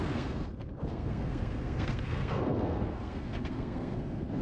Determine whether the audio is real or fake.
fake